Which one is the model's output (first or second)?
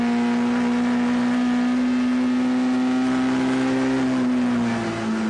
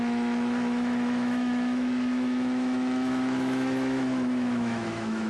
second